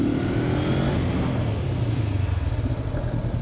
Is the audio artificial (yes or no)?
no